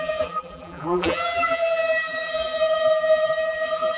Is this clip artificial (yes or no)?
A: yes